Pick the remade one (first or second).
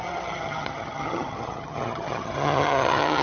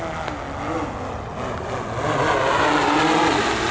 first